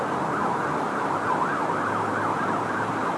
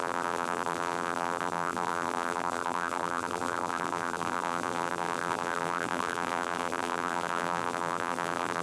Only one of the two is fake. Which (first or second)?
second